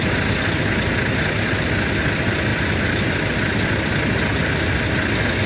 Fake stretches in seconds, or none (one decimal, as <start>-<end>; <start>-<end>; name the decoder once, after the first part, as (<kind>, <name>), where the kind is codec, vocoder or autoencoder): none